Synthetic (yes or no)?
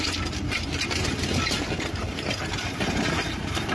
no